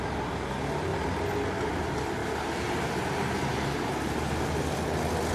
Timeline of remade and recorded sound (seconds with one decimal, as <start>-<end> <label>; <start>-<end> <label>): 0.0-5.3 recorded